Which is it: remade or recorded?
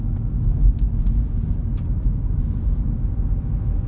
recorded